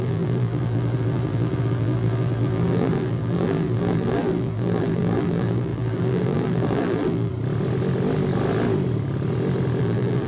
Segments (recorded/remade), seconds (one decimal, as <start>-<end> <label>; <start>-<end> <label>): 0.0-7.3 remade; 7.3-9.8 recorded; 9.8-10.3 remade